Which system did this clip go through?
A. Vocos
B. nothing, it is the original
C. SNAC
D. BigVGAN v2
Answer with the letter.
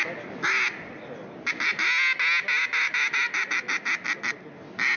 B